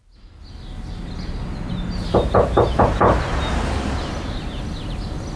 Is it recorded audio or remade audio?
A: recorded